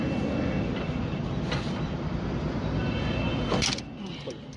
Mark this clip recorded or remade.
recorded